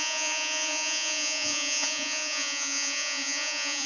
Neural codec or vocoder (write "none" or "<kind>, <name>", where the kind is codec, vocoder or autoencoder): vocoder, Vocos